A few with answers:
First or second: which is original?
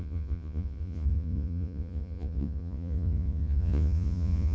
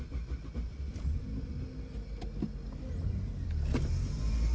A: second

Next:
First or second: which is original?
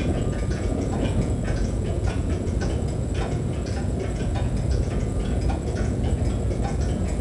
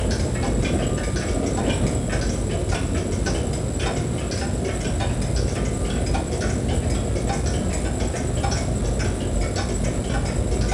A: second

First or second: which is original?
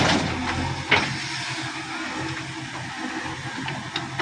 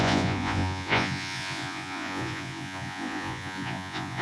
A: first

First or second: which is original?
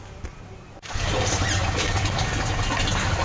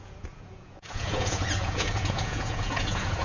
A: first